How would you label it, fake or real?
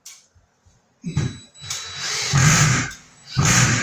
real